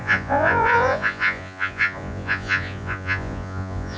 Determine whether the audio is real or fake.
fake